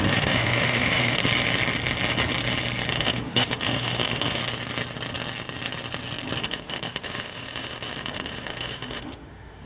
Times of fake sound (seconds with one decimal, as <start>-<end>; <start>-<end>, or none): 0.0-1.2; 2.9-4.4; 6.4-9.7